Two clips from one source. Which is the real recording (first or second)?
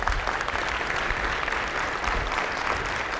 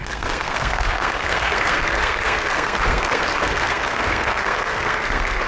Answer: first